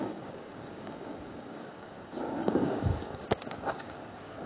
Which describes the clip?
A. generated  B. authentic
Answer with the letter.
A